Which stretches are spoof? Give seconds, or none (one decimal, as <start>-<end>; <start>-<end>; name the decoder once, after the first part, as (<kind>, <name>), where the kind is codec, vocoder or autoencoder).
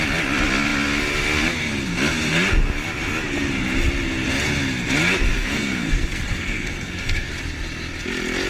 5.3-7.3 (codec, SNAC)